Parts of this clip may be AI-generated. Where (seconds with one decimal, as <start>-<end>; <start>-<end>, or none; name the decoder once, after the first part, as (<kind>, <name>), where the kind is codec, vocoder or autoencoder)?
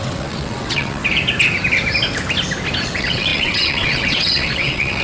0.0-1.0 (vocoder, WaveNeXt); 2.8-5.0